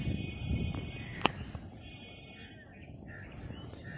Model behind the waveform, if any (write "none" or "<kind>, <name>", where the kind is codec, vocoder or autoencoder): none